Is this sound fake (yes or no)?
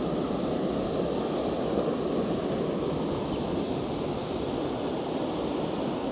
no